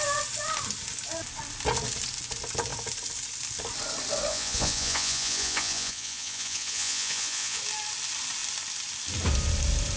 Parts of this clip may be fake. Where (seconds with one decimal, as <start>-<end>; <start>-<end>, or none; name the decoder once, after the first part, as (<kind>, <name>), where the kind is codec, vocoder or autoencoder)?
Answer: 4.3-7.6 (vocoder, Vocos)